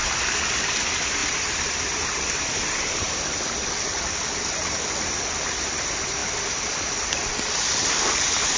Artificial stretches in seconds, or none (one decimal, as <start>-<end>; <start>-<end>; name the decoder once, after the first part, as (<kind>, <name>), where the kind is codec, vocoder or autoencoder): 1.2-3.2 (vocoder, BigVGAN v2)